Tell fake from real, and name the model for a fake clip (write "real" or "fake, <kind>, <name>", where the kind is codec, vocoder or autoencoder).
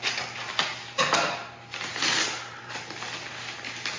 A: real